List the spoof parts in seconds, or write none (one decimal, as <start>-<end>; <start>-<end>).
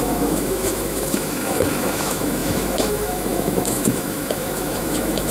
0.0-5.3